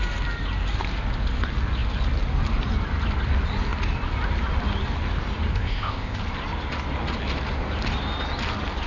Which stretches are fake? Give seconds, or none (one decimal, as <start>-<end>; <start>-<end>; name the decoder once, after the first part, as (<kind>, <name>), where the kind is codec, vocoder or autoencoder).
5.5-6.2 (codec, ZipCodec)